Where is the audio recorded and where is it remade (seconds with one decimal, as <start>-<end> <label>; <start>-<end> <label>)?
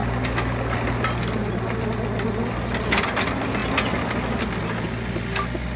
0.0-5.8 recorded